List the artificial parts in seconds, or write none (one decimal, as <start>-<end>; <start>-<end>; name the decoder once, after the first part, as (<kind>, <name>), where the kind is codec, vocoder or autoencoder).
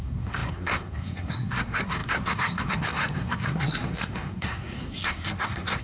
0.0-5.8 (codec, SNAC)